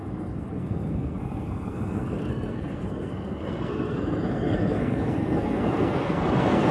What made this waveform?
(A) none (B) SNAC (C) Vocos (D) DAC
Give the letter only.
B